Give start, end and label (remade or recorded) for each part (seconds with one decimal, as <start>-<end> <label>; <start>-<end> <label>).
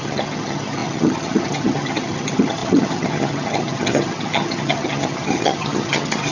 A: 0.0-6.3 remade